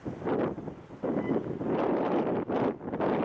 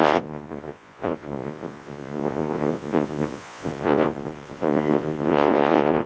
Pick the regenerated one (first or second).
second